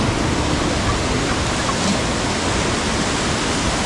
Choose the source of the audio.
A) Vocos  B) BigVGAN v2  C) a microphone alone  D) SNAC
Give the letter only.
C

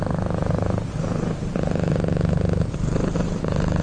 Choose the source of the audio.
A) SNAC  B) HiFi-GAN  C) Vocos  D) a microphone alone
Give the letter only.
D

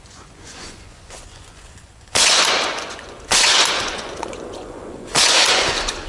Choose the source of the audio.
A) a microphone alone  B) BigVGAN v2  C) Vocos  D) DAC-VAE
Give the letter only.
C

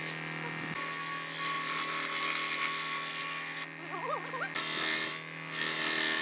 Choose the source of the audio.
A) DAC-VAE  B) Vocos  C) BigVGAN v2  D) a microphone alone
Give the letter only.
D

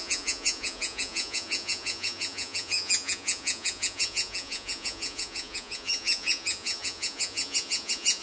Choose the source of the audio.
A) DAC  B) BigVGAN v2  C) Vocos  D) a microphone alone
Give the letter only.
C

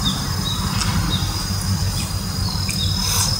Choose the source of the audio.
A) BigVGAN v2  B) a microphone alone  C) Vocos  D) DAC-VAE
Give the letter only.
B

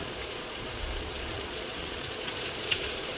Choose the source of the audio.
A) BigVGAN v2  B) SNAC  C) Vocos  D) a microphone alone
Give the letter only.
C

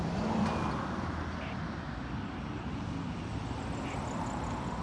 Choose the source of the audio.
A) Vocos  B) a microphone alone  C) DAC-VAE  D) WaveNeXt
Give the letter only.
B